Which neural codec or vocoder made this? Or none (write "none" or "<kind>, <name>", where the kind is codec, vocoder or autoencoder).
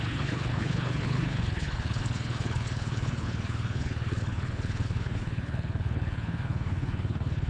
codec, HILCodec